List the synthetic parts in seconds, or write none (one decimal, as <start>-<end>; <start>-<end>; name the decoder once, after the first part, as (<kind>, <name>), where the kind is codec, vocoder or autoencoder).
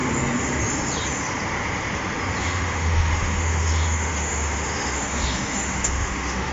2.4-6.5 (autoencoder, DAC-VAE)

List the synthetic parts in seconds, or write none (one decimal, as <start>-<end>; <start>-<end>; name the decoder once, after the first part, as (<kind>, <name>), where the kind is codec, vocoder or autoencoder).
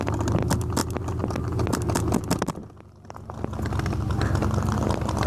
none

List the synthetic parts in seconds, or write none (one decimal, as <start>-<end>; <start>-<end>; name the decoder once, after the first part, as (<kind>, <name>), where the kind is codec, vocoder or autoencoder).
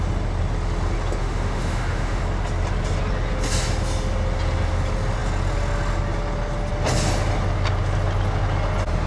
1.2-2.2 (autoencoder, DAC-VAE)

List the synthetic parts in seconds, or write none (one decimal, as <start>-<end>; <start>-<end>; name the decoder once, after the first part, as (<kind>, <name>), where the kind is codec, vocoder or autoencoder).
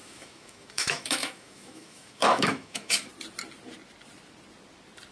0.0-3.1 (autoencoder, DAC-VAE)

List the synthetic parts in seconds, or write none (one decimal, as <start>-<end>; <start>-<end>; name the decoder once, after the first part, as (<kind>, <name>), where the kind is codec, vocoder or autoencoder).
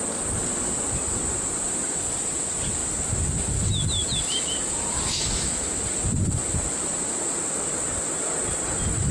5.1-5.8 (autoencoder, DAC-VAE)